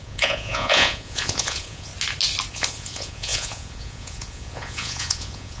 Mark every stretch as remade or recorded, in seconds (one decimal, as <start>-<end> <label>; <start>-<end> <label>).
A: 0.0-1.9 remade; 1.9-2.5 recorded; 2.5-5.6 remade